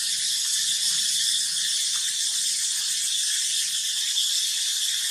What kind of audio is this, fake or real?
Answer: real